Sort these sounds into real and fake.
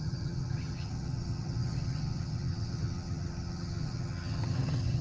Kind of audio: fake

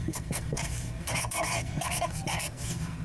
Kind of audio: fake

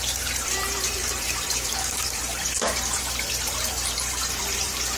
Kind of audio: fake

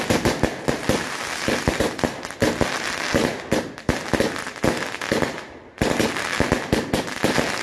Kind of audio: real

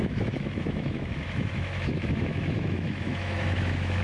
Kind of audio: fake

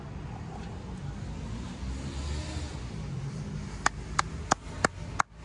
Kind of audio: real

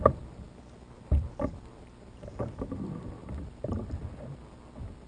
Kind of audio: real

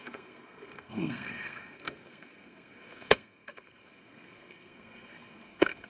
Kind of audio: fake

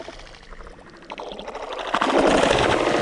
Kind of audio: real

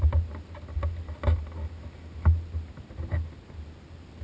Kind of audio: real